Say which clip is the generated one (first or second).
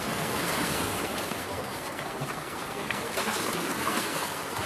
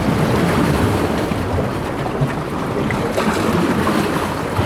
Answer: first